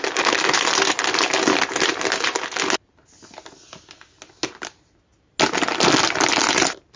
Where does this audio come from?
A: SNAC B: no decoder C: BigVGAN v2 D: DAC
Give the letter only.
B